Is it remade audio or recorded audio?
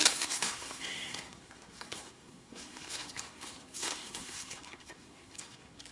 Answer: remade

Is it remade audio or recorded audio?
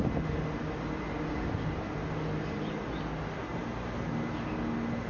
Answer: recorded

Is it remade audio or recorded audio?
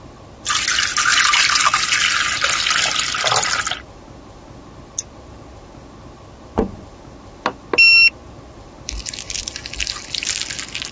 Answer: recorded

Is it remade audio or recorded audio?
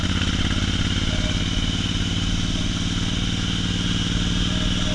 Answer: recorded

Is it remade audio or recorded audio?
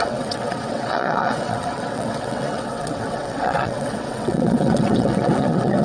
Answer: remade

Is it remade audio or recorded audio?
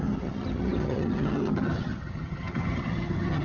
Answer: remade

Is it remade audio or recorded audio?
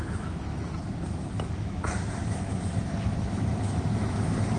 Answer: remade